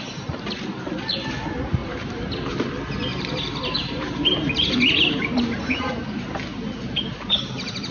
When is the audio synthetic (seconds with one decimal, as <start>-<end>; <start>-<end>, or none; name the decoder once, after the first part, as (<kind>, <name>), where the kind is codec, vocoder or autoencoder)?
1.8-2.5 (vocoder, BigVGAN v2); 3.1-5.9